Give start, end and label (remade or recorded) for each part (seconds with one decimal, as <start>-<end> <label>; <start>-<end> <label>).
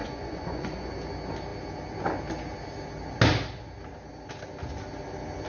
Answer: 0.0-0.9 remade; 0.9-5.5 recorded